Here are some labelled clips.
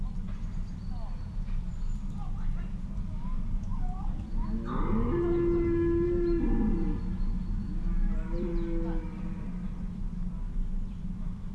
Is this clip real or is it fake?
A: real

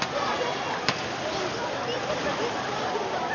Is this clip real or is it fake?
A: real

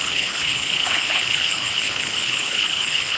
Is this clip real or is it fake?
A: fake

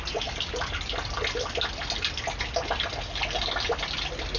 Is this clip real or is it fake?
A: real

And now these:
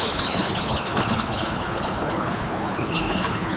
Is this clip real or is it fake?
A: fake